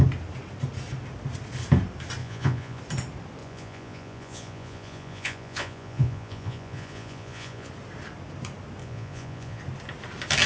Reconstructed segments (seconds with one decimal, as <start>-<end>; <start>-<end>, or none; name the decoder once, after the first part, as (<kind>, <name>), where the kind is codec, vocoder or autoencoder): 2.2-2.8 (vocoder, Vocos); 3.4-7.7; 8.8-9.6